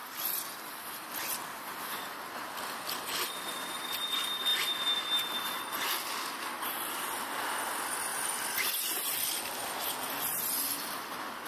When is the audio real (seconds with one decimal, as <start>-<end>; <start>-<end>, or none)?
0.0-11.5